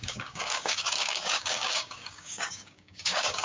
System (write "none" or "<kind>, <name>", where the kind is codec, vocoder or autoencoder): codec, DAC